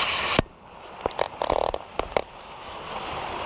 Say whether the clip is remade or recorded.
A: recorded